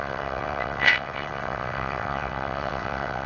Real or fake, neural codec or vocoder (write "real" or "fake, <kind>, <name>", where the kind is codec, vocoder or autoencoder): fake, vocoder, WaveNeXt